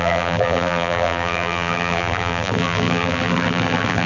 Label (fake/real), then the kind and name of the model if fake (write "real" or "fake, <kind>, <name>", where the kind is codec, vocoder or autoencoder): fake, vocoder, BigVGAN v2